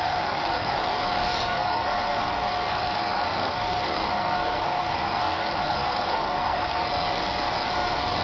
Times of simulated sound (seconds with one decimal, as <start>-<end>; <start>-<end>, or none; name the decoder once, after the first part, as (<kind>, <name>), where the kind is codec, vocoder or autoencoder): 0.0-8.2 (codec, SNAC)